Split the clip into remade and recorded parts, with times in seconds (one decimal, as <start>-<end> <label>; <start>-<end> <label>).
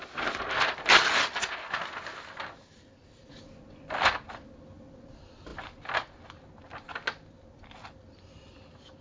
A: 0.0-9.0 recorded